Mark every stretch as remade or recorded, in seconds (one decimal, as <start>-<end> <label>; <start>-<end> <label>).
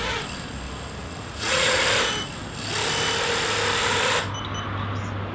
0.0-1.0 recorded; 1.0-1.8 remade; 1.8-5.3 recorded